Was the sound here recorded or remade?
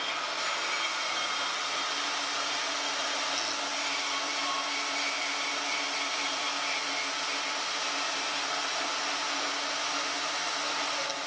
recorded